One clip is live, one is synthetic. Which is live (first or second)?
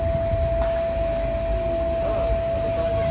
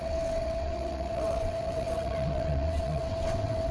first